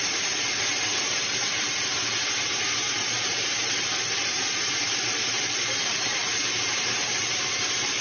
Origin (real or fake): fake